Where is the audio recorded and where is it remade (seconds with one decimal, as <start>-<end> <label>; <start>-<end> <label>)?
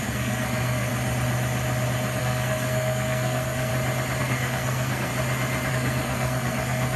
0.0-0.9 remade; 0.9-2.2 recorded; 2.2-3.7 remade; 3.7-4.2 recorded; 4.2-5.1 remade; 5.1-5.7 recorded; 5.7-7.0 remade